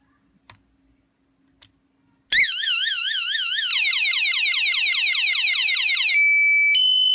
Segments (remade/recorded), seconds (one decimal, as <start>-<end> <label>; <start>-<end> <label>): 0.0-5.6 recorded; 5.6-6.1 remade; 6.1-7.1 recorded